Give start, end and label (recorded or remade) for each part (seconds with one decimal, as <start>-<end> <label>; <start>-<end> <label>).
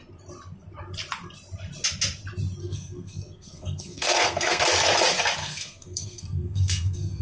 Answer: 0.0-2.6 recorded; 2.6-4.6 remade; 4.6-5.4 recorded; 5.4-7.2 remade